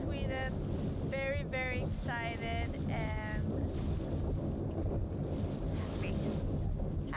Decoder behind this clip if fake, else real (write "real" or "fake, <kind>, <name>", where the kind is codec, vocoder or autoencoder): real